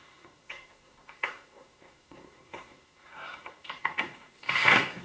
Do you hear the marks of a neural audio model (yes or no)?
yes